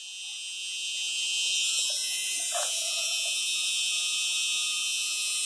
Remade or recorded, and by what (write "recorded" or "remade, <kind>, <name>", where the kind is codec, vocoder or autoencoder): remade, vocoder, Vocos